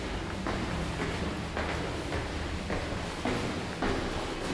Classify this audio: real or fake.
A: real